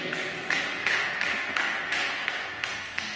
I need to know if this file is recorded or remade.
remade